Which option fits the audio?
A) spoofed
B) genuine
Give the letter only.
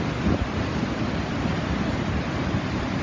A